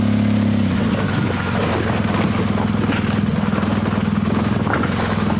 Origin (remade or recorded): recorded